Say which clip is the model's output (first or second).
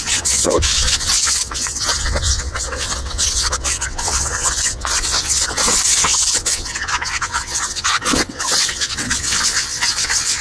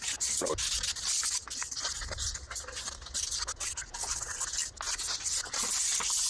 first